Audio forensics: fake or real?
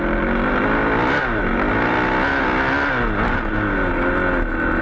real